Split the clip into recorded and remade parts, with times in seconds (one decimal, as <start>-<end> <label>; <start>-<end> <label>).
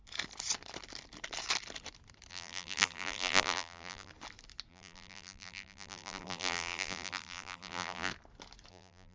0.0-2.3 recorded; 2.3-4.1 remade; 4.1-4.7 recorded; 4.7-8.1 remade; 8.1-8.7 recorded; 8.7-9.1 remade